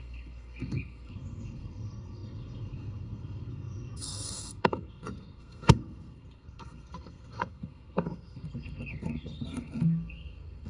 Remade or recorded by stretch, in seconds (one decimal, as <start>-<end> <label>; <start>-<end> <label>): 0.0-10.7 remade